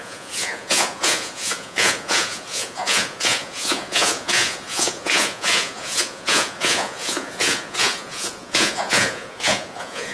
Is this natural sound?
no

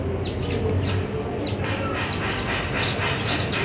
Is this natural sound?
yes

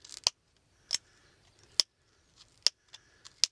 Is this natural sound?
yes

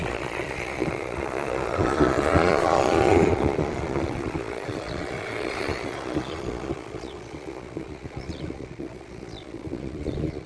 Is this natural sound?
no